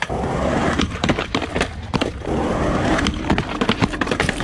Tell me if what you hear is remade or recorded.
remade